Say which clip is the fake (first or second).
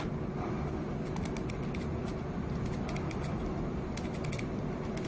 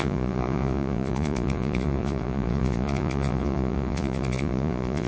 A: second